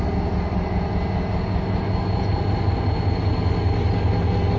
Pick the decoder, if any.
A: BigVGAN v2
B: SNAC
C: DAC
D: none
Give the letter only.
D